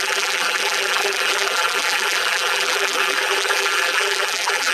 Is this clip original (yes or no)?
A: no